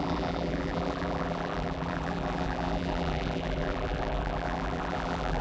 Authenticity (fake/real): fake